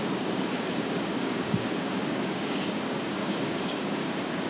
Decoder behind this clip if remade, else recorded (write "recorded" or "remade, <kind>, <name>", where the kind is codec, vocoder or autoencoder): remade, codec, DAC